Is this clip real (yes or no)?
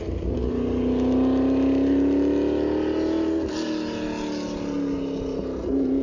yes